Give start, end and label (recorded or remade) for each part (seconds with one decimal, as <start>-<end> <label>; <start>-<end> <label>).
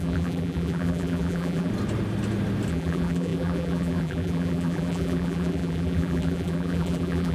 0.0-1.7 remade; 1.7-2.7 recorded; 2.7-7.3 remade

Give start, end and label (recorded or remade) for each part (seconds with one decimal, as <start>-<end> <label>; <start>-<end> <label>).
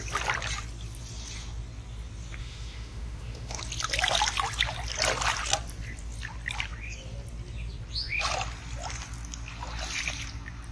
0.0-2.4 recorded; 2.4-3.6 remade; 3.6-10.7 recorded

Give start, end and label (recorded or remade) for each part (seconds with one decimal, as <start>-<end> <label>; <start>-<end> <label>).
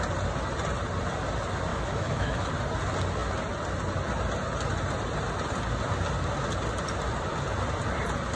0.0-1.7 recorded; 1.7-2.5 remade; 2.5-8.4 recorded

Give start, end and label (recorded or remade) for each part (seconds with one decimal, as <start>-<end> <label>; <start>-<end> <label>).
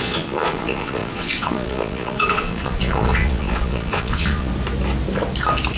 0.0-4.5 remade; 4.5-5.8 recorded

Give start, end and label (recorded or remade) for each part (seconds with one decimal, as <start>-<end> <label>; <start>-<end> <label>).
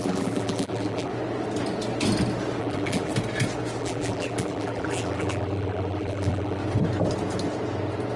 0.0-1.1 remade; 1.1-2.6 recorded; 2.6-3.1 remade; 3.1-3.8 recorded; 3.8-6.6 remade; 6.6-8.2 recorded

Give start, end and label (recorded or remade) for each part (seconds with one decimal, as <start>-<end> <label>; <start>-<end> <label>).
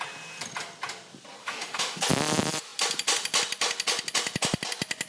0.0-1.4 recorded; 1.4-2.0 remade; 2.0-5.1 recorded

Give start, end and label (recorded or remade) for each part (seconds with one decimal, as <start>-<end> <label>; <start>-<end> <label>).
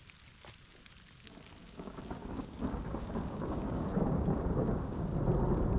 0.0-1.6 recorded; 1.6-5.1 remade; 5.1-5.8 recorded